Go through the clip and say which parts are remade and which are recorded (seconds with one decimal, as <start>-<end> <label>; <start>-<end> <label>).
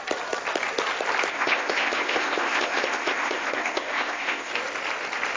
0.0-1.3 recorded; 1.3-4.5 remade; 4.5-5.4 recorded